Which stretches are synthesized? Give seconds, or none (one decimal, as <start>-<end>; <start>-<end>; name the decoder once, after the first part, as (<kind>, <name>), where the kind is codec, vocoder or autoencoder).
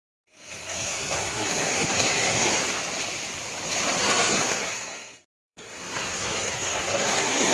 0.0-2.6 (codec, SNAC); 4.0-7.5